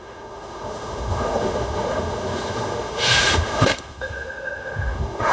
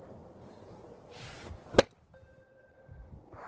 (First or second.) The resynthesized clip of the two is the first